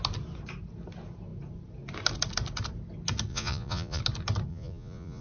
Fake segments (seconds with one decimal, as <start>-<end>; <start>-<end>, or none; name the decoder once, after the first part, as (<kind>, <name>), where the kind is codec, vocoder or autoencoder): 3.3-4.0 (vocoder, Vocos); 4.5-5.2